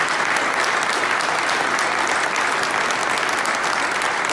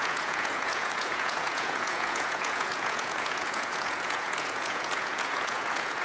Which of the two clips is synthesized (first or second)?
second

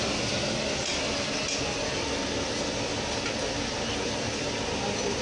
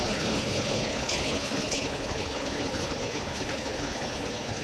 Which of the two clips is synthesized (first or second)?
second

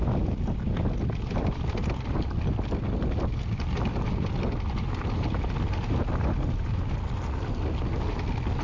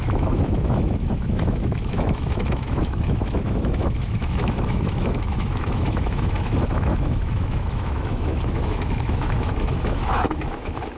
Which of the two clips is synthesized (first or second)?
second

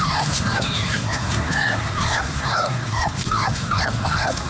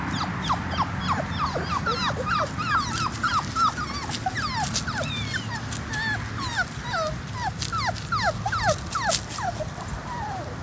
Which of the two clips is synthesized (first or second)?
first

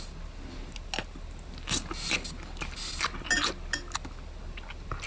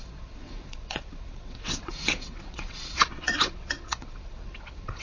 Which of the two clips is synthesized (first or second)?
second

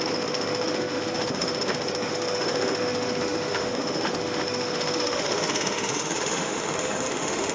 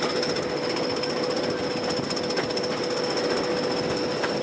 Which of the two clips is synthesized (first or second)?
first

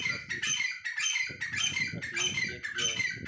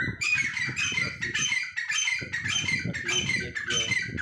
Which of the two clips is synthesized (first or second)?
second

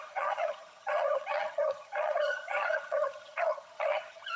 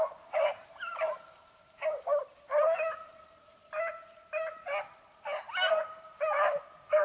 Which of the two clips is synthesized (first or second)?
first